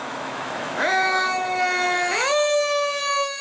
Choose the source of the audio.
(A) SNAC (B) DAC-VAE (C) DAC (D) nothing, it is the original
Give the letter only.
B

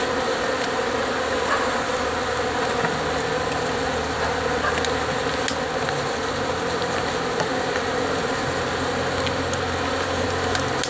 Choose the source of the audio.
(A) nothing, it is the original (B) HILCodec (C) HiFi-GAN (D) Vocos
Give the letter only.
A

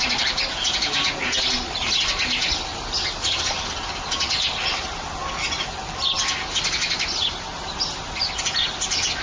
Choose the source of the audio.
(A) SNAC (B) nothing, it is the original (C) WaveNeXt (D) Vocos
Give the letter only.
B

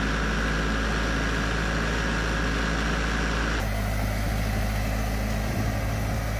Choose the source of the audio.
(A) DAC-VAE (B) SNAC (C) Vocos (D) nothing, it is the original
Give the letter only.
D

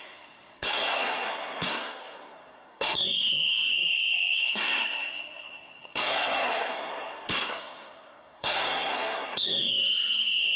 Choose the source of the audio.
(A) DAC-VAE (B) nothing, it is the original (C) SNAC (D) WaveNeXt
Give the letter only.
C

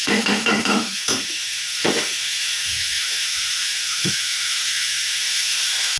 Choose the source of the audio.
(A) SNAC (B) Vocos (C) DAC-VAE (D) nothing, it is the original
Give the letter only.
C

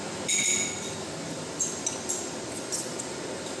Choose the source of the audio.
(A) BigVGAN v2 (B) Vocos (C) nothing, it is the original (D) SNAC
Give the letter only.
C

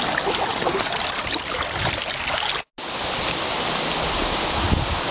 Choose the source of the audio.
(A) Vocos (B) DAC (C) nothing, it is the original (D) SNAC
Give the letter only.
C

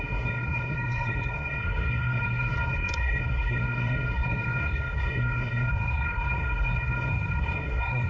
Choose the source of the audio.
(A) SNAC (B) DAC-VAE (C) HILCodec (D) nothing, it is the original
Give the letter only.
A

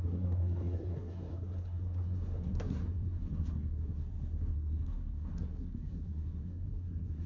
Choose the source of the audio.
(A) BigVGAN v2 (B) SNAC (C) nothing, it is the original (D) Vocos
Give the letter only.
B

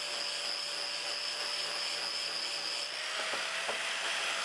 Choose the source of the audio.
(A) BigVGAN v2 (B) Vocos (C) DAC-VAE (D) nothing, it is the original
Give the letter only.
D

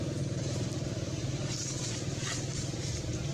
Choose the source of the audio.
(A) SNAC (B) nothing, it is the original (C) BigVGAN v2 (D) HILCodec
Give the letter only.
B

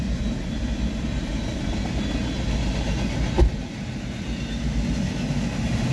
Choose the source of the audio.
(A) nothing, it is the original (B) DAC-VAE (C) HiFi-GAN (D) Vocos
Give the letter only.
A